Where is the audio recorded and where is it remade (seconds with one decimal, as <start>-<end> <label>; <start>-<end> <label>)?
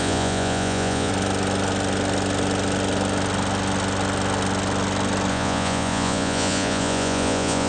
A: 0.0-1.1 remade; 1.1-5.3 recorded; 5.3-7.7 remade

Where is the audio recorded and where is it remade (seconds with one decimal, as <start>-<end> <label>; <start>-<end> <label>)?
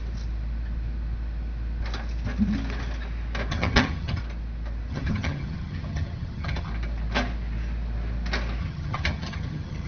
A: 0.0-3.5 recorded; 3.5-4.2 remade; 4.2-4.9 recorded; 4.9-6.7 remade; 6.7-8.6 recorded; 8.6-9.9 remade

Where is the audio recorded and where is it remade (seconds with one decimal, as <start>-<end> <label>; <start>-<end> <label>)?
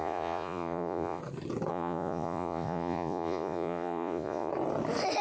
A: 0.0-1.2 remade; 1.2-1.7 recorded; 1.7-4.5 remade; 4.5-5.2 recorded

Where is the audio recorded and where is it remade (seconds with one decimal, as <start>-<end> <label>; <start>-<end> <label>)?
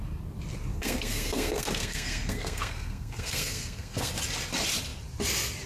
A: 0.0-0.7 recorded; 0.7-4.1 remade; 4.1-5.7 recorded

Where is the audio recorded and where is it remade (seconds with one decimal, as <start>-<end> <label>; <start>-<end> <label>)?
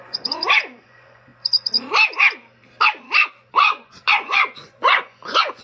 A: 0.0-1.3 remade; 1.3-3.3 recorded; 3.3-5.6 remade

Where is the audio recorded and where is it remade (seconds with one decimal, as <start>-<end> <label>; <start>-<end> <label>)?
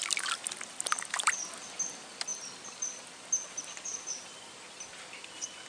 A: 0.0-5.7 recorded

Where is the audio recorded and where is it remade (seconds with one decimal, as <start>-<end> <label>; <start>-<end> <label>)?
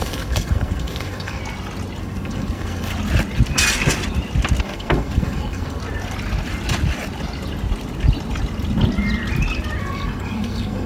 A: 0.0-1.4 remade; 1.4-2.0 recorded; 2.0-2.9 remade; 2.9-4.6 recorded; 4.6-5.8 remade; 5.8-9.8 recorded; 9.8-10.9 remade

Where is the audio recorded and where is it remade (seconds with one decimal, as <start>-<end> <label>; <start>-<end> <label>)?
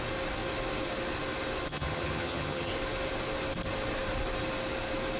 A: 0.0-1.7 recorded; 1.7-2.7 remade; 2.7-5.2 recorded